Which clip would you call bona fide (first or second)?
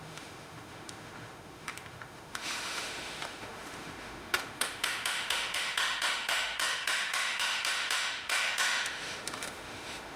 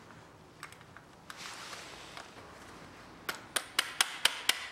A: second